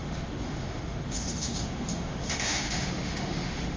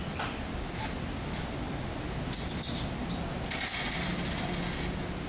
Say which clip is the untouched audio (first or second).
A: second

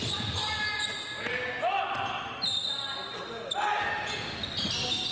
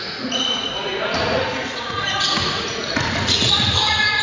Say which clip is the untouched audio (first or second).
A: first